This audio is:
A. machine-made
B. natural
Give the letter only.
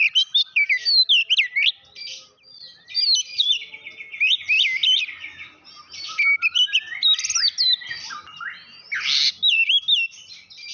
B